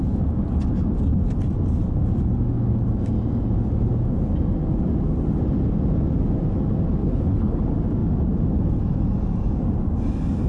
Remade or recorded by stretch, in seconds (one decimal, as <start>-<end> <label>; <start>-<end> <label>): 0.0-7.0 recorded; 7.0-7.6 remade; 7.6-10.5 recorded